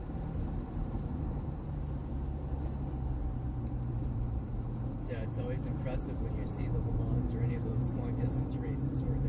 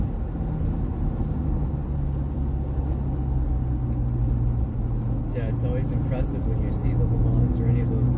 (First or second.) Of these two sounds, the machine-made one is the first